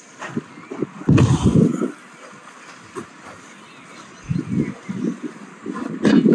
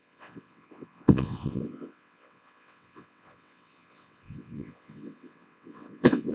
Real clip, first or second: first